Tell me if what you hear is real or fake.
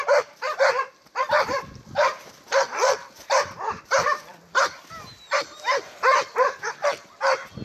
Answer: real